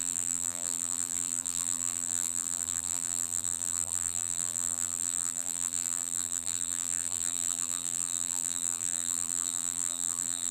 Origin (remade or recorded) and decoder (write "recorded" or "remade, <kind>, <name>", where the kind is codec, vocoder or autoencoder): remade, vocoder, BigVGAN v2